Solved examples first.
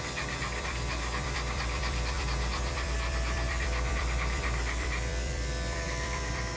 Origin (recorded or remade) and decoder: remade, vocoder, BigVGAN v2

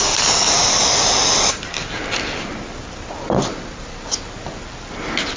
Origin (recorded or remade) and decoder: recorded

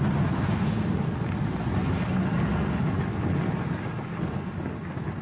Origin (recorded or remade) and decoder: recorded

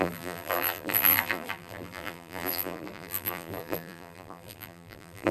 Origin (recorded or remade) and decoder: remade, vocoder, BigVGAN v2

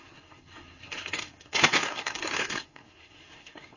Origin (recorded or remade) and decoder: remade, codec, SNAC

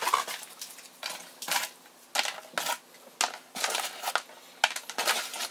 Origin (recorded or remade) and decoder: recorded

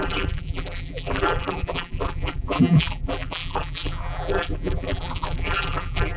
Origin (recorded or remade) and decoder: remade, vocoder, BigVGAN v2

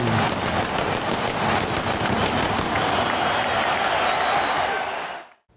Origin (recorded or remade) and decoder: recorded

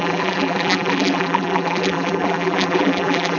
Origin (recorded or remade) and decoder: remade, vocoder, BigVGAN v2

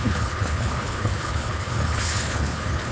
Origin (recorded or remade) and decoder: remade, codec, HILCodec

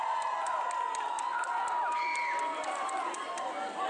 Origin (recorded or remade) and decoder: recorded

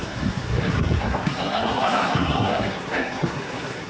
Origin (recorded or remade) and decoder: remade, codec, SNAC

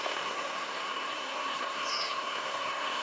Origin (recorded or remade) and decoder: remade, codec, SNAC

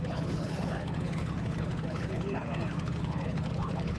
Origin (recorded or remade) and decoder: remade, codec, HILCodec